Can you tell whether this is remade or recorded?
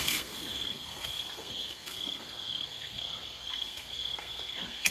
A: remade